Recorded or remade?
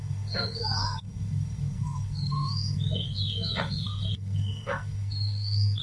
remade